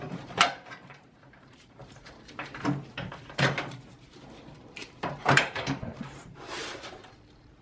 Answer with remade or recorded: remade